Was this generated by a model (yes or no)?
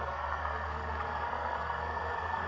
yes